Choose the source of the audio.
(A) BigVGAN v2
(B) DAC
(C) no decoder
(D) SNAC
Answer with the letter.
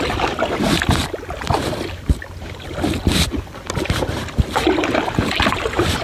C